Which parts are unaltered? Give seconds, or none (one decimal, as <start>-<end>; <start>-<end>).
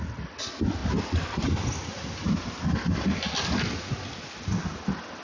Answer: 0.0-5.2